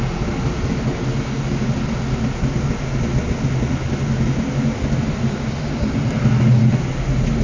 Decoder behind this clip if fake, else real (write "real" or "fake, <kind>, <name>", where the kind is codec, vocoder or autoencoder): real